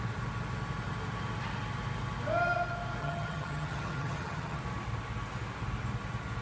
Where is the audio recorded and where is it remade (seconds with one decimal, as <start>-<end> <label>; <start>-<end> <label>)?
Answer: 0.0-3.0 recorded; 3.0-4.6 remade; 4.6-6.4 recorded